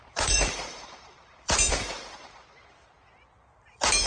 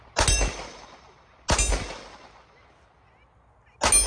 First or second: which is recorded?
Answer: second